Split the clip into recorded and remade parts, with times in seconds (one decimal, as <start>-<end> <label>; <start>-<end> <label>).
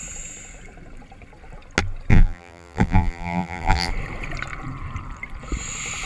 0.0-2.1 recorded; 2.1-3.9 remade; 3.9-6.1 recorded